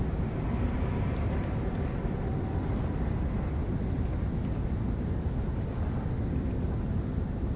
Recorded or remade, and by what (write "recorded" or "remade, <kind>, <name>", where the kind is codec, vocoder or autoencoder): recorded